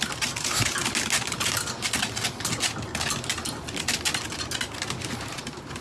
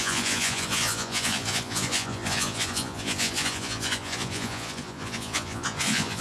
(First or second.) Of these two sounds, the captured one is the first